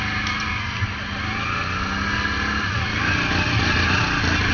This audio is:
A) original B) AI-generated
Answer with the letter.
A